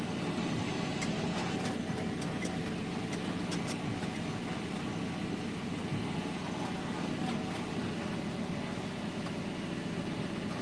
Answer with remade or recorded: recorded